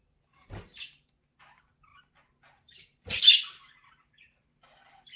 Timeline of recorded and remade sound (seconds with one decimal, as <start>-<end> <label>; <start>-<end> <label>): 0.0-5.2 recorded